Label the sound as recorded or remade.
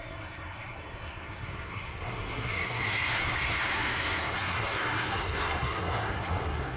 remade